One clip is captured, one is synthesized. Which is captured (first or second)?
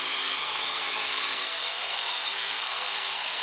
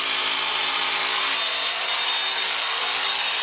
second